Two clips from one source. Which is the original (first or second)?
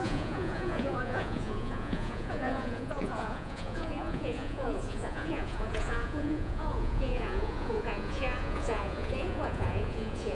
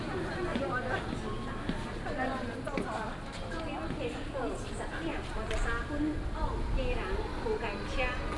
second